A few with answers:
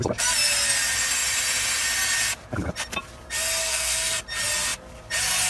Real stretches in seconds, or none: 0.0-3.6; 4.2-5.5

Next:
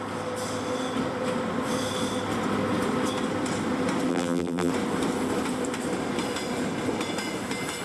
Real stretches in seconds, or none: 0.0-4.1; 4.7-7.8

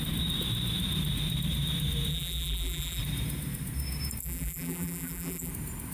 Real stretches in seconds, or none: 0.0-2.1; 3.0-4.2; 5.5-5.9

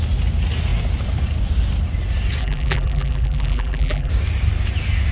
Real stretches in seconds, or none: 0.0-2.4; 4.1-5.1

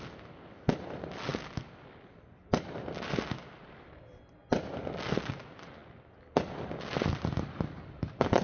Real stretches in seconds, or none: 0.0-8.4